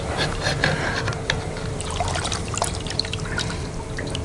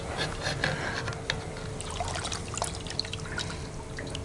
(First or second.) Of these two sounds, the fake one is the first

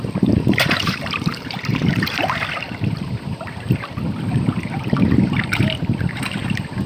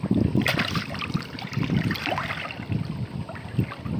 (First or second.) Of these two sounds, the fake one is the first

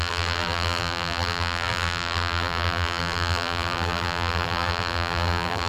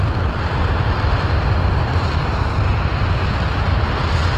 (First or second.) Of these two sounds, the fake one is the first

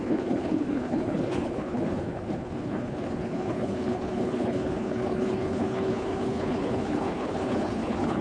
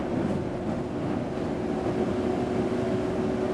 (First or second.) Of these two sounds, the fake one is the first